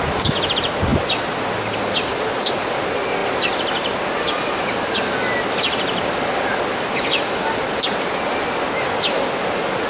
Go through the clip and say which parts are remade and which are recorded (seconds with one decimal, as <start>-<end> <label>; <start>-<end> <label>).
0.0-9.9 recorded